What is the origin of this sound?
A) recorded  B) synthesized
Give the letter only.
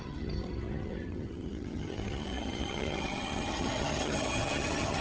B